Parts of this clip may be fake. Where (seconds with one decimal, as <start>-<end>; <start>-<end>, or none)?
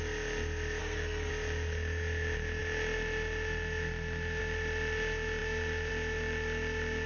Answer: 0.8-1.3